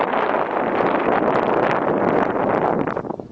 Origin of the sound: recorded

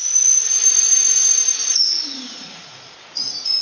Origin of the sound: remade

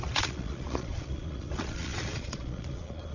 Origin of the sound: remade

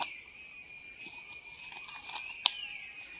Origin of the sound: recorded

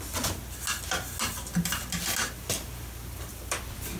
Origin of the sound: recorded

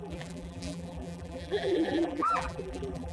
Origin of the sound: remade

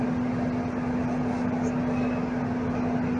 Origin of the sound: recorded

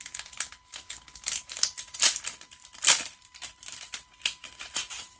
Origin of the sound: recorded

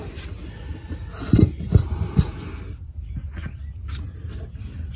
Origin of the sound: recorded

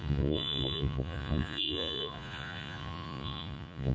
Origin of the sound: remade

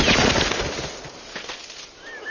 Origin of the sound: recorded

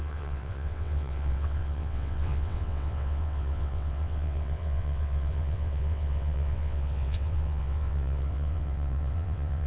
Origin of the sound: remade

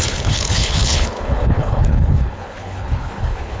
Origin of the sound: remade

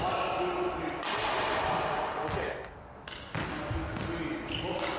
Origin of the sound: recorded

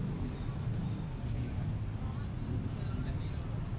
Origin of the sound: recorded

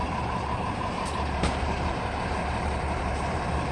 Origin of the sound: remade